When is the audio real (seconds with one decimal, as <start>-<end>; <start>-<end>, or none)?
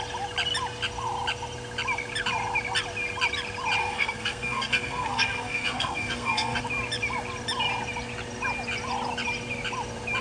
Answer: 0.0-3.8; 6.6-10.2